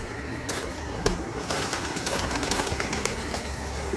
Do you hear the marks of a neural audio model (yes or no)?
yes